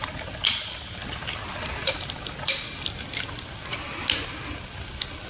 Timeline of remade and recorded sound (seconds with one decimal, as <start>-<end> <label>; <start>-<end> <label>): 0.0-5.3 recorded